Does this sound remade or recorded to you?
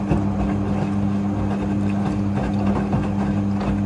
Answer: recorded